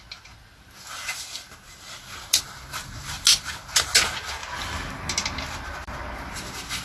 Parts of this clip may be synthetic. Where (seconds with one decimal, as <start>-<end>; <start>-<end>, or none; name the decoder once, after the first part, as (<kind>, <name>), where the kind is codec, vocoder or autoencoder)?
none